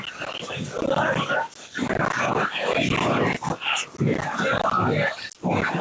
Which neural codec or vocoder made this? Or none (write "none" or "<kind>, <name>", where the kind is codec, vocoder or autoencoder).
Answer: none